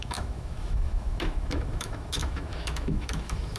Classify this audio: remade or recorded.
remade